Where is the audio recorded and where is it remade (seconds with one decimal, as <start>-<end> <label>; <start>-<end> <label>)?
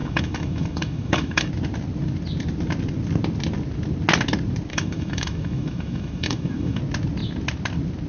0.0-1.5 remade; 1.5-4.7 recorded; 4.7-6.8 remade; 6.8-8.1 recorded